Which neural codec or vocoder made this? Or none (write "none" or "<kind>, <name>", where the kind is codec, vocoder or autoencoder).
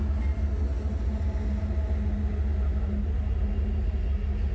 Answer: none